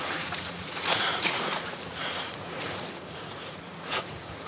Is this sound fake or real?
fake